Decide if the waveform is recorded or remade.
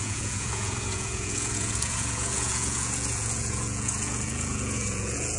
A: remade